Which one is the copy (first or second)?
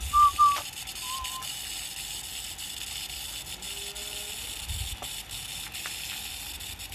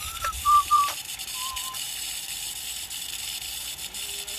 second